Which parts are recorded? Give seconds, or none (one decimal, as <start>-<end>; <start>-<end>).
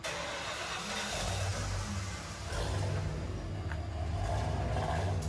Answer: 0.0-5.3